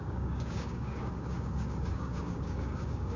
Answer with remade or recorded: remade